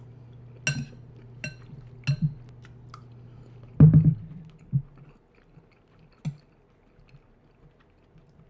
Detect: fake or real real